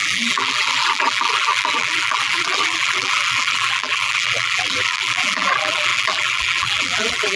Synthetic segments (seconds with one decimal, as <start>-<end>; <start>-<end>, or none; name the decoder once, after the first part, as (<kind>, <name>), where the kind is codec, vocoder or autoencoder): 0.0-7.4 (vocoder, BigVGAN v2)